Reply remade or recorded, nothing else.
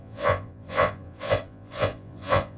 remade